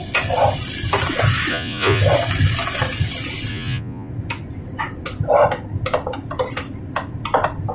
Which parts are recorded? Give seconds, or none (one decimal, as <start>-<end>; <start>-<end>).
0.0-1.5; 2.0-3.5; 4.1-7.7